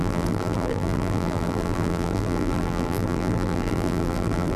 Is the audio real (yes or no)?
no